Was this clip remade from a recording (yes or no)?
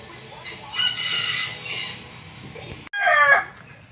no